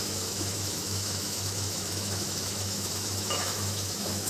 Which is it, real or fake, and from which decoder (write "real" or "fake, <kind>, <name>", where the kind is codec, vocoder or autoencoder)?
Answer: fake, autoencoder, DAC-VAE